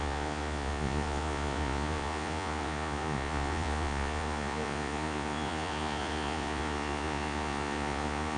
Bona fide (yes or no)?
no